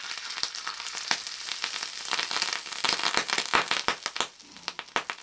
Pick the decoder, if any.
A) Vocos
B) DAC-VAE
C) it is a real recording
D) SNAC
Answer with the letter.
C